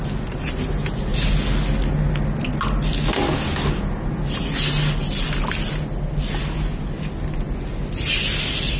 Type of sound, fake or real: real